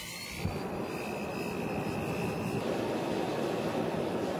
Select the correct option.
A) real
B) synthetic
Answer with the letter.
A